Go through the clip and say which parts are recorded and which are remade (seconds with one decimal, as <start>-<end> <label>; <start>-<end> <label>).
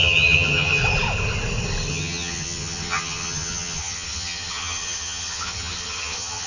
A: 0.0-0.8 remade; 0.8-1.9 recorded; 1.9-6.5 remade